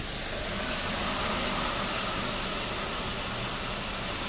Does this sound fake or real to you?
real